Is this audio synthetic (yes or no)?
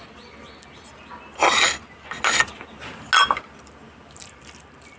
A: no